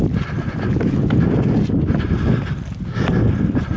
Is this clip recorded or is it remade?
recorded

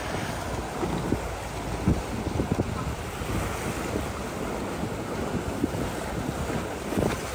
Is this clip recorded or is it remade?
recorded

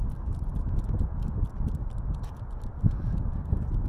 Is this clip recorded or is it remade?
recorded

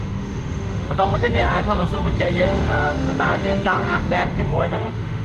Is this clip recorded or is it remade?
remade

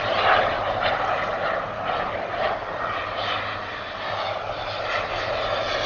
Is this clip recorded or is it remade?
recorded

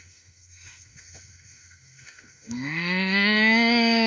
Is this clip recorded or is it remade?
remade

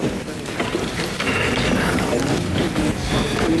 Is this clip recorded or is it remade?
recorded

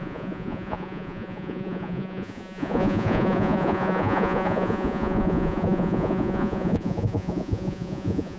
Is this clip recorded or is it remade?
remade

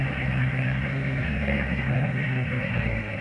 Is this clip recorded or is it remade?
remade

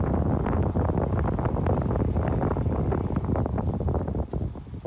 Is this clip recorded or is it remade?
recorded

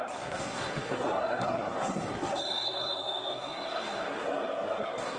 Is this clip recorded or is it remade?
remade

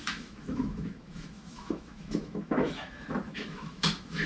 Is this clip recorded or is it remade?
remade